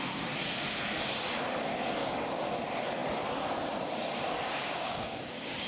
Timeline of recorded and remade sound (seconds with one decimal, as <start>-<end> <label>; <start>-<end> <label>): 0.0-2.0 recorded; 2.0-2.5 remade; 2.5-4.6 recorded; 4.6-5.7 remade